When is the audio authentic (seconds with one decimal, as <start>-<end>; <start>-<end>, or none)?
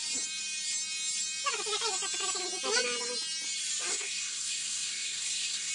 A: 0.0-3.9